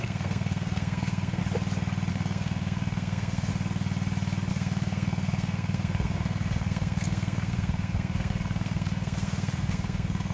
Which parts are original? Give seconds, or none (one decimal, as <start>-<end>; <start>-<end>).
1.4-2.1; 3.5-4.5